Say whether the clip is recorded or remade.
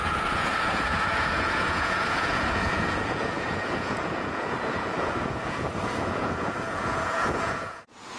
remade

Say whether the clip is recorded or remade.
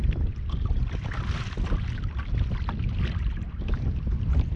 recorded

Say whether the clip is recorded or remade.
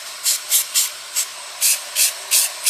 recorded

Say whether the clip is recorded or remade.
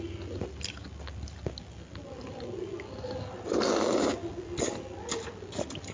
recorded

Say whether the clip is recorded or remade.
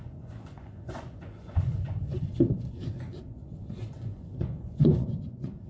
remade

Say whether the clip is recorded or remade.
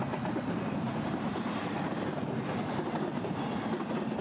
recorded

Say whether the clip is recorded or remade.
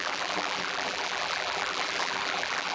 remade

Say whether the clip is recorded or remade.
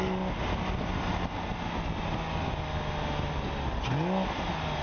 recorded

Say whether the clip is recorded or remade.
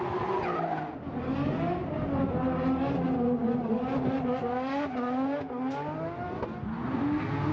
recorded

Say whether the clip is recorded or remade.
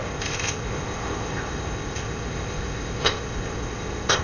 remade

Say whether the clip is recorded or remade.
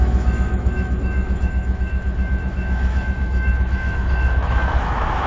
remade